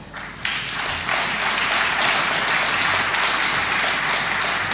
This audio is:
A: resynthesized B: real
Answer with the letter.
B